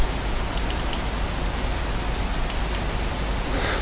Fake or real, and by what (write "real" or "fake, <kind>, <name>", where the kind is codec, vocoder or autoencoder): real